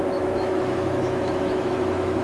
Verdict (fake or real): fake